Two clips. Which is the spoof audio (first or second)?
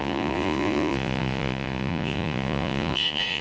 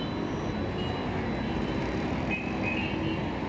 first